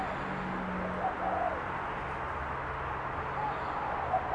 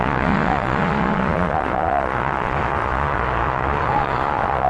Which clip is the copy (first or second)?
second